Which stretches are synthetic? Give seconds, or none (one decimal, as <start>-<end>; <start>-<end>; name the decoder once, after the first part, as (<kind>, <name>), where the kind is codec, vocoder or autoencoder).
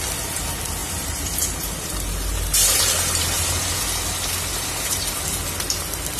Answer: 0.8-3.8 (vocoder, BigVGAN v2); 4.5-5.1